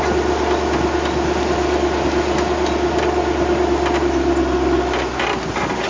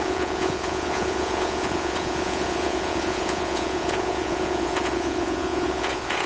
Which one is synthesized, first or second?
second